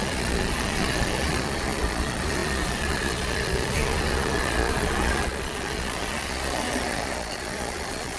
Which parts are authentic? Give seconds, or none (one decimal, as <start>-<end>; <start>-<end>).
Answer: none